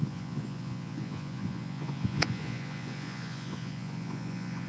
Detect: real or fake fake